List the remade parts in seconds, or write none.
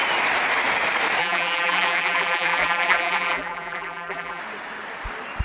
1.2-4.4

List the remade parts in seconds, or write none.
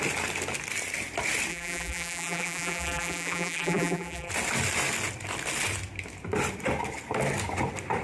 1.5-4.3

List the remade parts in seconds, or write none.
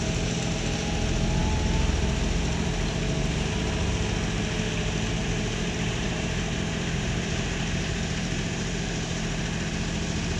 5.2-9.7